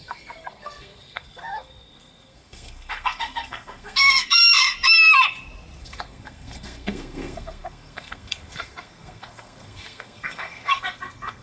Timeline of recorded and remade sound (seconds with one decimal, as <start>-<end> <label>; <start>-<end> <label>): 0.0-4.4 remade; 4.4-5.8 recorded; 5.8-11.4 remade